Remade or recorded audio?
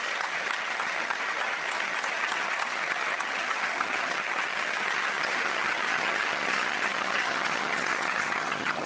remade